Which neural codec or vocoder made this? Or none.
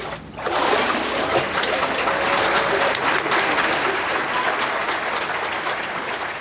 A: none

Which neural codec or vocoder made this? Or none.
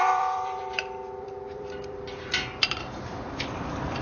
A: vocoder, BigVGAN v2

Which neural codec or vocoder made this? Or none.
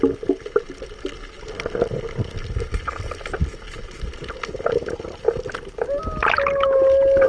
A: none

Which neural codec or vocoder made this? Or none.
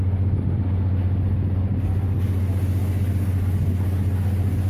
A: none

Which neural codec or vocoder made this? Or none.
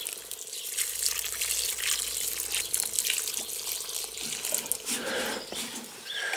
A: none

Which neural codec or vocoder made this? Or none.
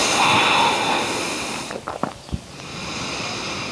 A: none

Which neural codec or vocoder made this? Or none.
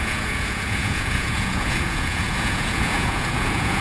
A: vocoder, Vocos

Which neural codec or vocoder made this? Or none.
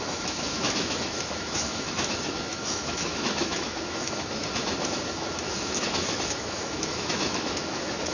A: autoencoder, DAC-VAE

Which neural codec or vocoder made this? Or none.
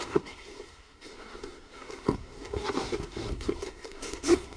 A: codec, SNAC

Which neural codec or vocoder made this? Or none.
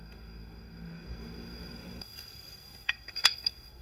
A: codec, SNAC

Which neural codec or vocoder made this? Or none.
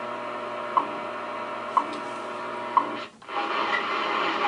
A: none